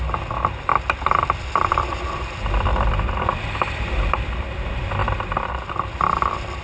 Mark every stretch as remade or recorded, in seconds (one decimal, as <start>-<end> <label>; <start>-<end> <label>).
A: 0.0-0.7 recorded; 0.7-4.1 remade; 4.1-5.0 recorded; 5.0-6.6 remade